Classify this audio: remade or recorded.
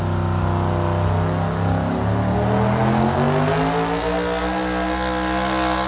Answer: recorded